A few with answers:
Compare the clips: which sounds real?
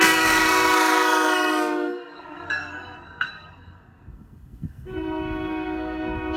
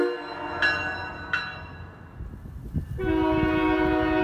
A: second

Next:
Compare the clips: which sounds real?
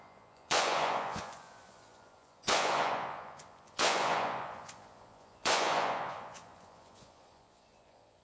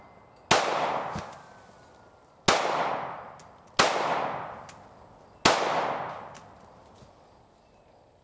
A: second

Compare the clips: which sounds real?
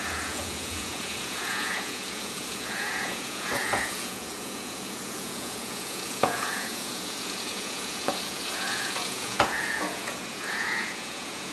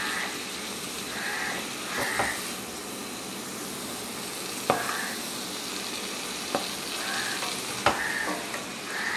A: second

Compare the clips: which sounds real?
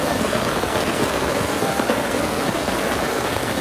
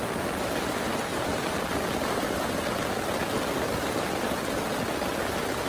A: second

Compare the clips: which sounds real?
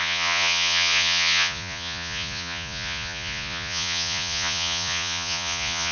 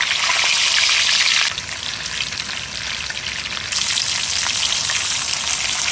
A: second